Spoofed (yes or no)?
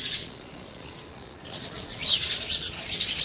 yes